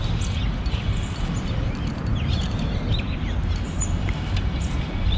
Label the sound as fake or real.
real